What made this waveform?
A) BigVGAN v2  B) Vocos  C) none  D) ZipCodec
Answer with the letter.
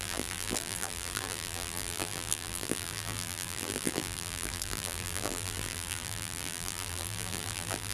A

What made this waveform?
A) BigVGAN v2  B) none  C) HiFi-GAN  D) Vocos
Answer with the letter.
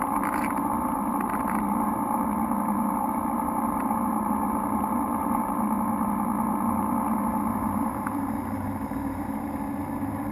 A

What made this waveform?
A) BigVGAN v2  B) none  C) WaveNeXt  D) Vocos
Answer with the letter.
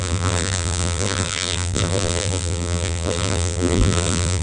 A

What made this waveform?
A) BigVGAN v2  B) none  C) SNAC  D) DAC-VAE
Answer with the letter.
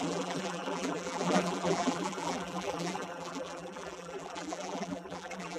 A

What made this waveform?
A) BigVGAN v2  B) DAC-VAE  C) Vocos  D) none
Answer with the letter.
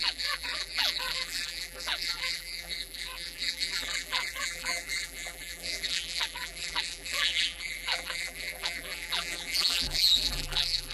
A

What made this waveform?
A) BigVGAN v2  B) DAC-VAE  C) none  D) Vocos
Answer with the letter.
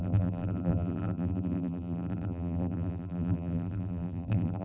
A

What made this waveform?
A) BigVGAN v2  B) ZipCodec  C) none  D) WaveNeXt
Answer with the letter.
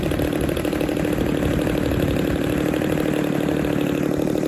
C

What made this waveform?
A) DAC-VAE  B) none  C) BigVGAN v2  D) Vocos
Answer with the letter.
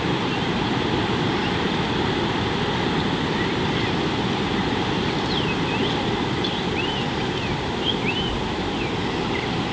C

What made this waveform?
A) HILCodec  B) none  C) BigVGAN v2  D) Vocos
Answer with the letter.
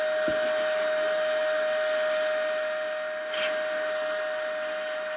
B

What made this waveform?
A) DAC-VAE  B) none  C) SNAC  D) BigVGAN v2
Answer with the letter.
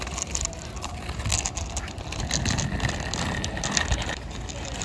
B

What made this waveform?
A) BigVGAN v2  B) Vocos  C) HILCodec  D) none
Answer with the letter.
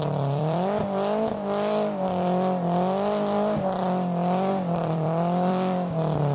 A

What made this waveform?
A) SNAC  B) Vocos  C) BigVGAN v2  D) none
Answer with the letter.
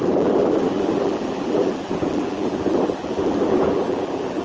C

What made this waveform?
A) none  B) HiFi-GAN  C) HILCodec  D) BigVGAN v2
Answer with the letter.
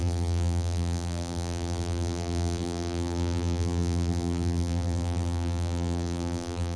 D